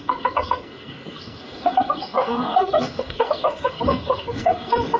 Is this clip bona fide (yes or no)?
no